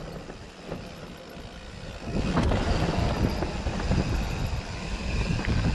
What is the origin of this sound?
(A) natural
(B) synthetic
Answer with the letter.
A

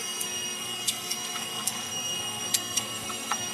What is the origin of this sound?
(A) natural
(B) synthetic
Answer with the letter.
B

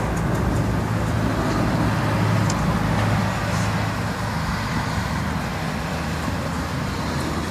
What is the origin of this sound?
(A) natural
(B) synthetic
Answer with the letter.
A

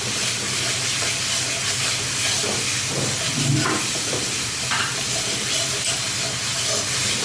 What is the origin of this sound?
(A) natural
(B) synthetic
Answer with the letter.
A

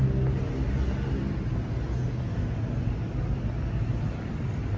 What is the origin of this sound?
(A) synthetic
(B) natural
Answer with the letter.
B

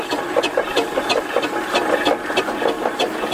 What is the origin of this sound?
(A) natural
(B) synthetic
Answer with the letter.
A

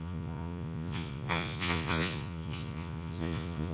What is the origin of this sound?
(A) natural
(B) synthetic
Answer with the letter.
B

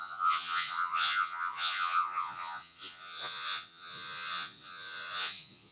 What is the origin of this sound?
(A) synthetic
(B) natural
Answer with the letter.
A